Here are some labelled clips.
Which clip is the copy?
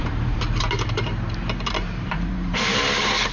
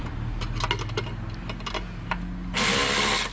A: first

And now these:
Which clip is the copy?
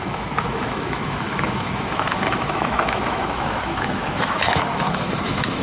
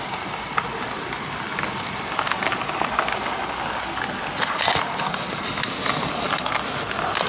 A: first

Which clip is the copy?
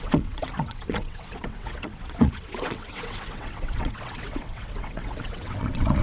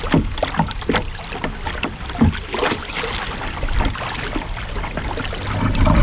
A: first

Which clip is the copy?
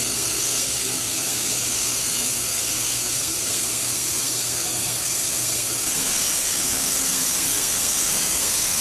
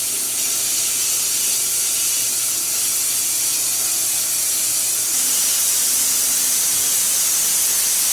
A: first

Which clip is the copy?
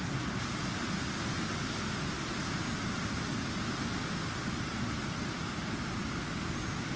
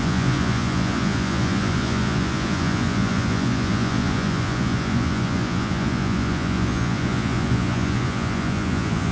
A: second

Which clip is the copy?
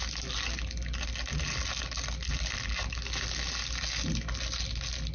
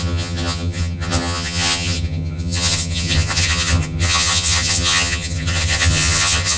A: second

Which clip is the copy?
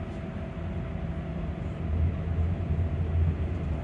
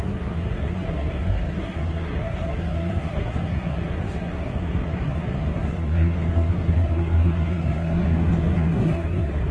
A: second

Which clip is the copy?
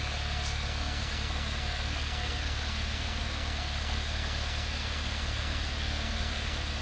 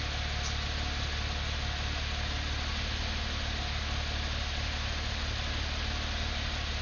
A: first